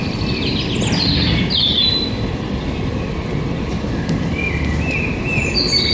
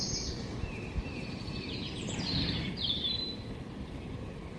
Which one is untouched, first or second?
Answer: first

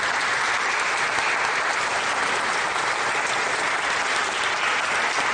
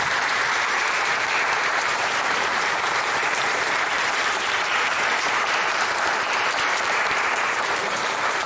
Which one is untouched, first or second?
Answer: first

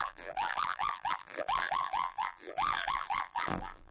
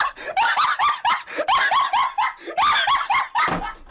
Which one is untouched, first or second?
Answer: second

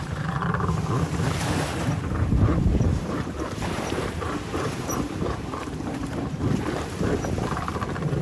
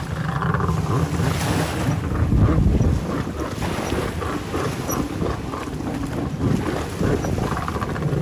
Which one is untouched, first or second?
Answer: second